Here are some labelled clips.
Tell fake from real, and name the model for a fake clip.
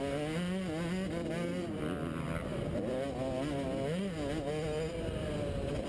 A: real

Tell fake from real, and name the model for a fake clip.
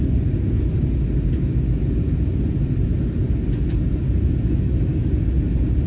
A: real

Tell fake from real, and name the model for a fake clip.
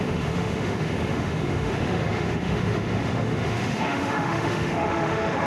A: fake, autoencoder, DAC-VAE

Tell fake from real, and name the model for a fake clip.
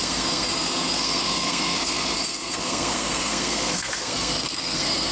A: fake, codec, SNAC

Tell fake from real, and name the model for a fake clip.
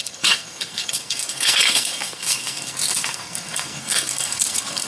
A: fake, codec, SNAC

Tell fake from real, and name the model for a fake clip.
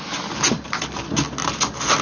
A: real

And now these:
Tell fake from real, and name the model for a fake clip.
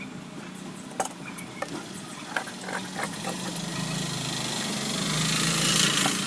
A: real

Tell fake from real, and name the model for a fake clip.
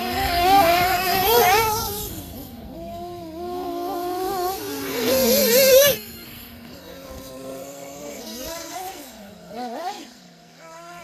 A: fake, codec, SNAC